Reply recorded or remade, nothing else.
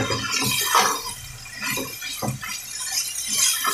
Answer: recorded